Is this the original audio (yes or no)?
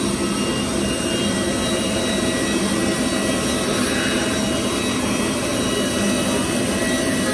yes